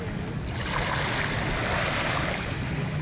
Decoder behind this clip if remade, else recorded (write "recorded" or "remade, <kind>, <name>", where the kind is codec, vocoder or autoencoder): recorded